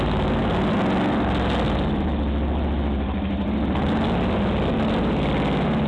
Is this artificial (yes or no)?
no